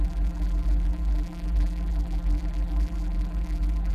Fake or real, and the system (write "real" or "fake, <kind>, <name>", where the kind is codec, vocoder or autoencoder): fake, vocoder, BigVGAN v2